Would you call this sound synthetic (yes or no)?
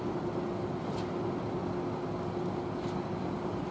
no